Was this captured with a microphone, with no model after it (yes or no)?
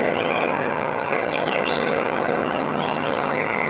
no